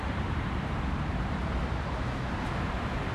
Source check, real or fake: fake